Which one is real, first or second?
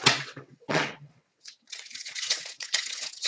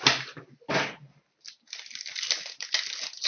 second